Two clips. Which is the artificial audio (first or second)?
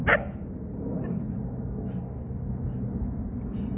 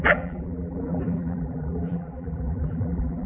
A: second